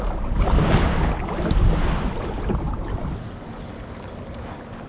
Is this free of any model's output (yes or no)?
yes